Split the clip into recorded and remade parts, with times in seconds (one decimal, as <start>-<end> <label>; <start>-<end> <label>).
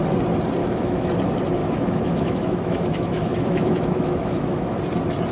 0.0-0.6 recorded; 0.6-1.1 remade; 1.1-1.6 recorded; 1.6-4.8 remade; 4.8-5.3 recorded